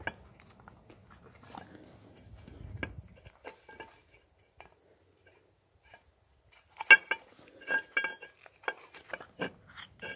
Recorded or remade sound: recorded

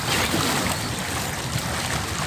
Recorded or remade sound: recorded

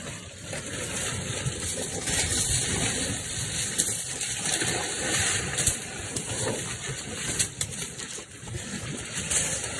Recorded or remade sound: remade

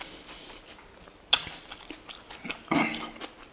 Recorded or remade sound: recorded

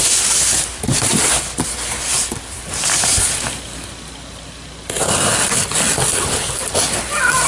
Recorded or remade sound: recorded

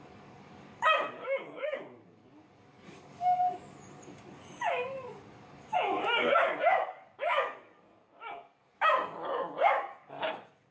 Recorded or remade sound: remade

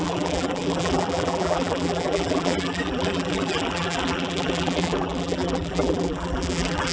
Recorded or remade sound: remade